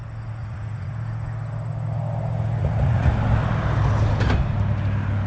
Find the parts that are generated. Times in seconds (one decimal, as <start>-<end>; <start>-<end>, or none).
0.4-0.9; 2.6-3.1